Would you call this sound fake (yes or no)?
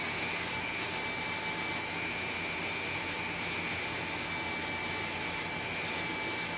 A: no